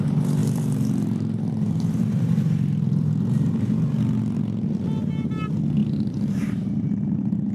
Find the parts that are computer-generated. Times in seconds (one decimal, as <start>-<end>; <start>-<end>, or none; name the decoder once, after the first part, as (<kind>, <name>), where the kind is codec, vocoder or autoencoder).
0.4-4.0 (vocoder, BigVGAN v2); 5.8-7.5